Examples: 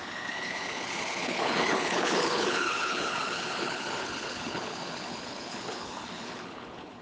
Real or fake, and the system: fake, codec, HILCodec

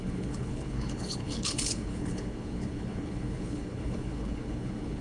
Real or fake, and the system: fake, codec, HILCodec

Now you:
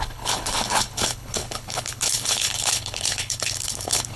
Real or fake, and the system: fake, codec, HILCodec